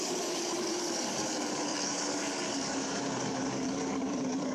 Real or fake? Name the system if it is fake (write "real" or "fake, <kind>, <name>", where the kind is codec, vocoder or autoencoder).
fake, codec, DAC